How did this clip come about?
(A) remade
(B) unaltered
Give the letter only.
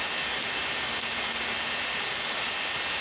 B